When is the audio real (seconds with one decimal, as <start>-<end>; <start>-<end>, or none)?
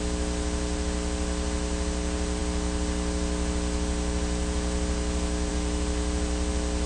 0.0-6.9